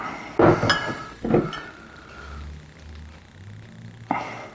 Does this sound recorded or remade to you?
recorded